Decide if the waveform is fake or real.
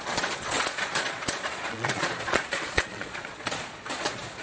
fake